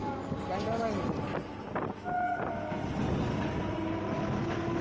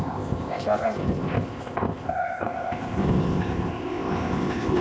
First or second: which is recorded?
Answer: first